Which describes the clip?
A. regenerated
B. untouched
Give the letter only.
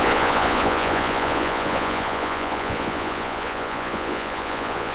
A